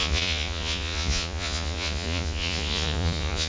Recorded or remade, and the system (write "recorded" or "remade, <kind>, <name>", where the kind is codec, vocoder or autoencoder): remade, vocoder, Vocos